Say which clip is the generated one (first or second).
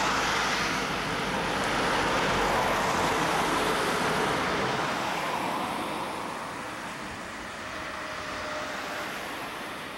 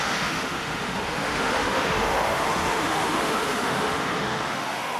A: second